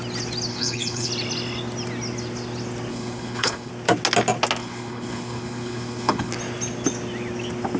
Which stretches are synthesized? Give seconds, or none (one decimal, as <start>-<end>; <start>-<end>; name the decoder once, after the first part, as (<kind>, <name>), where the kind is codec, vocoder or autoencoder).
0.5-1.1 (codec, HILCodec); 2.9-3.7; 4.6-6.3